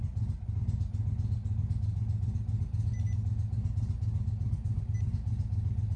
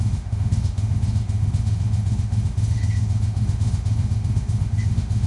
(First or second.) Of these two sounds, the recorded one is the first